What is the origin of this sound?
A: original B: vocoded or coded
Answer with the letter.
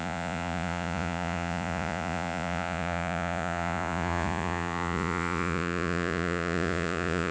B